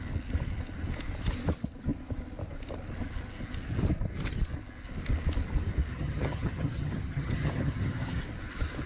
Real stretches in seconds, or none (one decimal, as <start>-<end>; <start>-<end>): 0.0-5.9; 8.2-8.9